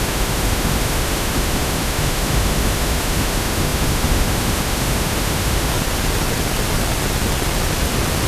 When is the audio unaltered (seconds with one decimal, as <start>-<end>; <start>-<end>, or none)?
5.7-8.3